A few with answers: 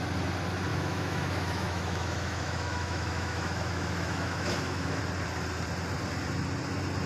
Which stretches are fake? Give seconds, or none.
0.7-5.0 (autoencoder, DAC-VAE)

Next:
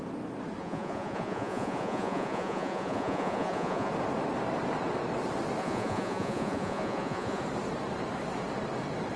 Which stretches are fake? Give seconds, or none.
0.6-3.9 (vocoder, Vocos); 5.6-7.4